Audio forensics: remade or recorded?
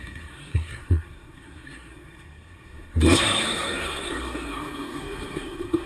remade